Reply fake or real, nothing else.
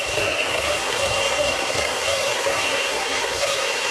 fake